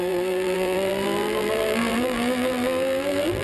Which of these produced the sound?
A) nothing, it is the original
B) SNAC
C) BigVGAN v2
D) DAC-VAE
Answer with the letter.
C